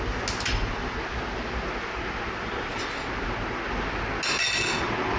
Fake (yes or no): no